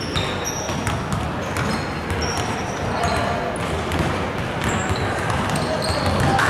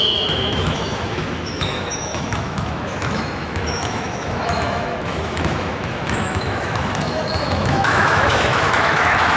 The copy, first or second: second